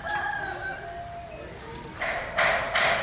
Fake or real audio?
real